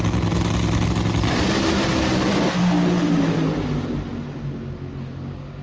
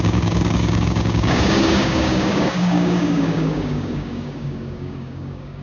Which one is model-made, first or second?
second